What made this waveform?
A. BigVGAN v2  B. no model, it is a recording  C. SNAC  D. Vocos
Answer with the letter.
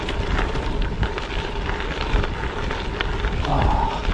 B